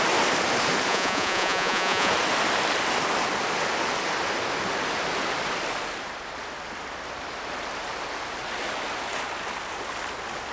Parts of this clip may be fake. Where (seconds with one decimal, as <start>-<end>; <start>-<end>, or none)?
0.9-2.1